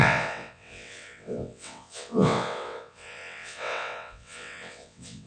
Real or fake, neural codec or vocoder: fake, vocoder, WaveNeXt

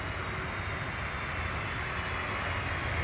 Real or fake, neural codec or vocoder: real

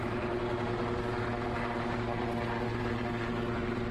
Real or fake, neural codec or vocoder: real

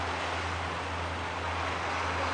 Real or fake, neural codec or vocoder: real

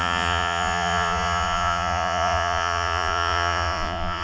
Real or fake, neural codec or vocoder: fake, vocoder, Vocos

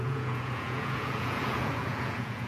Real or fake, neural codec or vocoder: fake, vocoder, Vocos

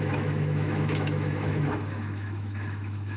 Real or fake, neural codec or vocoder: fake, autoencoder, DAC-VAE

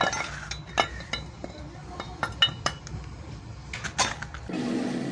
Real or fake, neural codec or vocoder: real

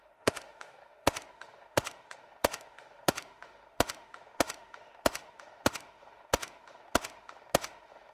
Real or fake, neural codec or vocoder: fake, autoencoder, DAC-VAE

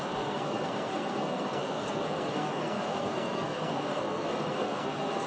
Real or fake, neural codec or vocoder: fake, codec, SNAC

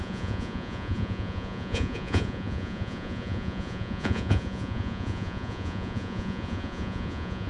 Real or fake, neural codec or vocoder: fake, vocoder, Vocos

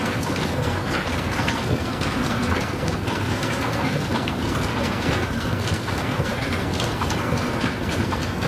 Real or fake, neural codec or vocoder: fake, codec, SNAC